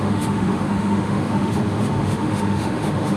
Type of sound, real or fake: fake